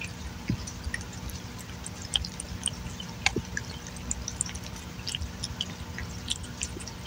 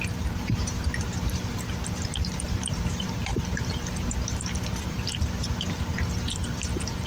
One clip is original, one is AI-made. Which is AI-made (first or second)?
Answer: second